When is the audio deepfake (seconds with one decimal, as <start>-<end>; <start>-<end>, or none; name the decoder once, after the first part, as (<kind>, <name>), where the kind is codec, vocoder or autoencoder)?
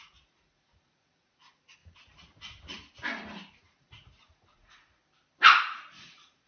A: 0.0-1.8 (vocoder, Vocos); 3.6-5.0; 5.9-6.5